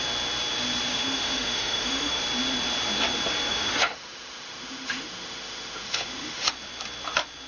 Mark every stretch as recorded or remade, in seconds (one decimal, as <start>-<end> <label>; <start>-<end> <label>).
0.0-0.9 recorded; 0.9-2.2 remade; 2.2-3.5 recorded; 3.5-6.5 remade; 6.5-7.5 recorded